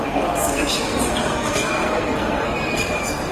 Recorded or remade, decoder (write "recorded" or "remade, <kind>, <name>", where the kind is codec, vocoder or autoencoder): remade, codec, SNAC